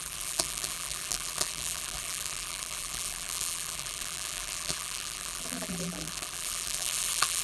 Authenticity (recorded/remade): remade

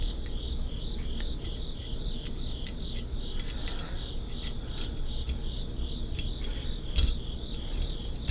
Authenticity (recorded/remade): remade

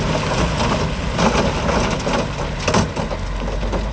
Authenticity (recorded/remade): recorded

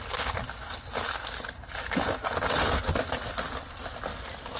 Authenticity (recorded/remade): recorded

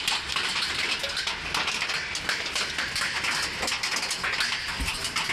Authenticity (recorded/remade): recorded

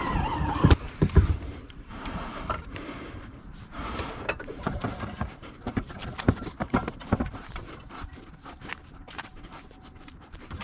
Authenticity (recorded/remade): remade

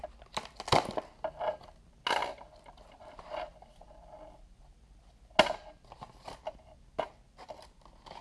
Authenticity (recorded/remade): recorded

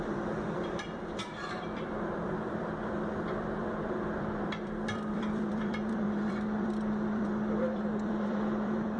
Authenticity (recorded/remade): remade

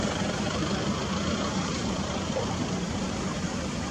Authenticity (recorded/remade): remade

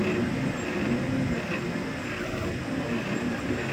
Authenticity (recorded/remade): recorded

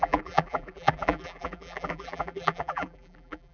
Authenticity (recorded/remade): remade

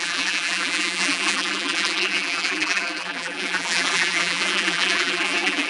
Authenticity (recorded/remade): remade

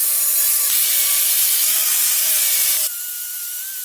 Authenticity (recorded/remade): recorded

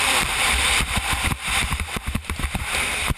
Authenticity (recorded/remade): remade